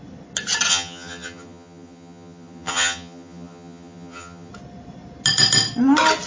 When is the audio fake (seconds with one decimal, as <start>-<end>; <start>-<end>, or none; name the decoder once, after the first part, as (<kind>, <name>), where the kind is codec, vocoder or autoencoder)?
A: 0.7-4.5 (vocoder, HiFi-GAN)